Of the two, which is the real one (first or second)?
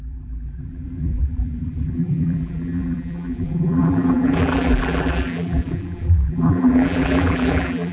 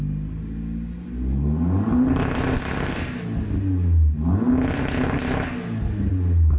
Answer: second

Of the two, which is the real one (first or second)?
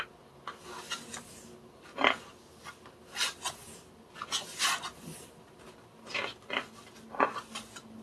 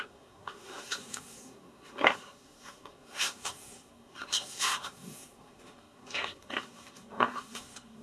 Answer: first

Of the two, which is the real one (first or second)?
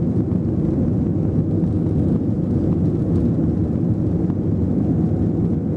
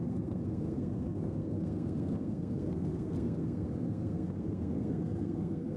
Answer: first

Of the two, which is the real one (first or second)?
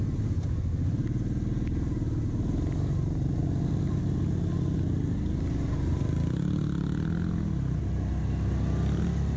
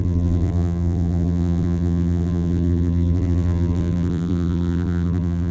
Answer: first